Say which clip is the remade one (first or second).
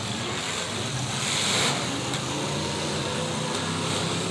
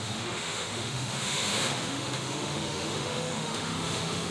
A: second